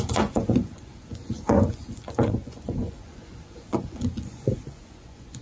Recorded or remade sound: remade